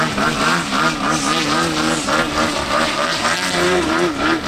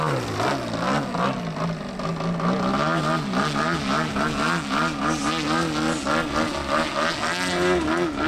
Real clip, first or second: second